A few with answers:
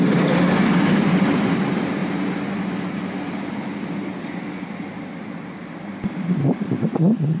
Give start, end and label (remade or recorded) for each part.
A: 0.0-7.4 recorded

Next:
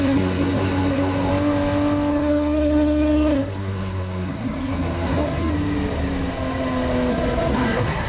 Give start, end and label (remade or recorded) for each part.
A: 0.0-1.3 remade; 1.3-2.1 recorded; 2.1-5.5 remade; 5.5-7.1 recorded; 7.1-8.1 remade

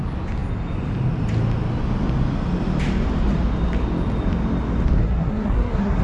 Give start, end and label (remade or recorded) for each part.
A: 0.0-5.0 recorded; 5.0-6.0 remade

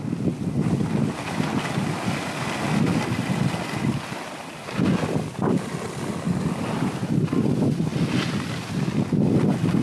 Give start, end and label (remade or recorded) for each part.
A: 0.0-9.8 recorded

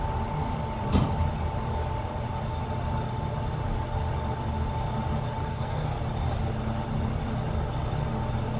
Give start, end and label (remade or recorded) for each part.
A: 0.0-5.5 recorded; 5.5-6.0 remade; 6.0-8.6 recorded

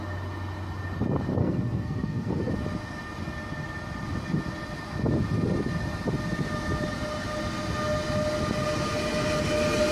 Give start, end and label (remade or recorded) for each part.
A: 0.0-1.4 recorded; 1.4-2.5 remade; 2.5-9.9 recorded